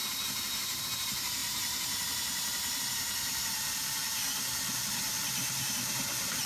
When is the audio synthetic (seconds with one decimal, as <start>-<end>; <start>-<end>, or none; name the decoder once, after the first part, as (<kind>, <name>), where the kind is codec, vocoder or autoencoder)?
0.0-6.5 (vocoder, BigVGAN v2)